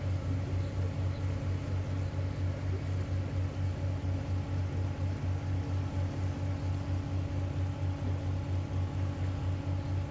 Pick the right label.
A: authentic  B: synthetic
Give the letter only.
A